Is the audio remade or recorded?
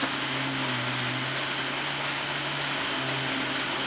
recorded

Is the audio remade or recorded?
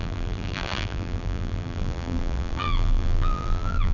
remade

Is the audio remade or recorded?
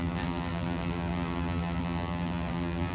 remade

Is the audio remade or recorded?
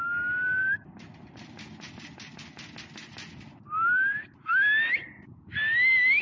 recorded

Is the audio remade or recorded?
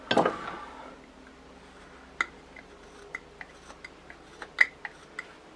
recorded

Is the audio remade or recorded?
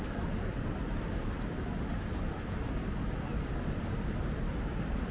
remade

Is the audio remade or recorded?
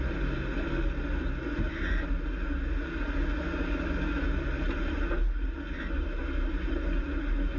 recorded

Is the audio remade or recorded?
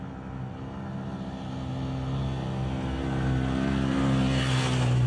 recorded